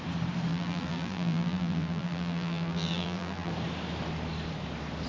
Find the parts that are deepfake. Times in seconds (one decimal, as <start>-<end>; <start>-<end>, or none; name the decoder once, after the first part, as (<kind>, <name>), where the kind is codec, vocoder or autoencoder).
0.5-3.5 (vocoder, BigVGAN v2)